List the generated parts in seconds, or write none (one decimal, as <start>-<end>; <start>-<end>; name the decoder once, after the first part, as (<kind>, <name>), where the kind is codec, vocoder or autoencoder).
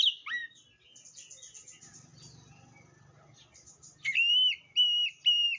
none